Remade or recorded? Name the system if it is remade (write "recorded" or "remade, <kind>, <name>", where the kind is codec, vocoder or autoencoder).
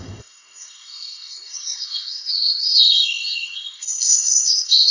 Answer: remade, codec, SNAC